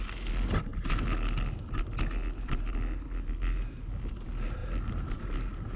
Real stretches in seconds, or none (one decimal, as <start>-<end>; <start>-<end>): 0.0-5.8